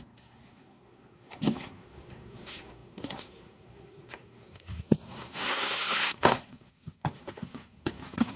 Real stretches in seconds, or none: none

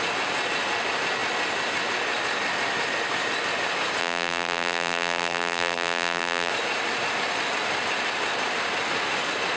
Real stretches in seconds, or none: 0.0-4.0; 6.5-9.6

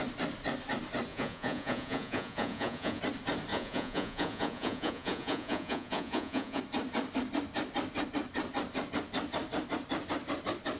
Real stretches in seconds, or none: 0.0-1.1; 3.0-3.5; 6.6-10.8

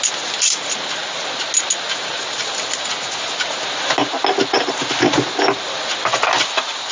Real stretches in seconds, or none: 0.0-6.9

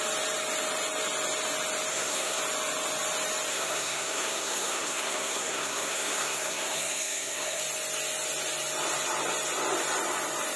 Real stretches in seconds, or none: 0.0-1.9; 2.4-3.5; 7.6-10.6